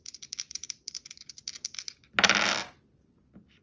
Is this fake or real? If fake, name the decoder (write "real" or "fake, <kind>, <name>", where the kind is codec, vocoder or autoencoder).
real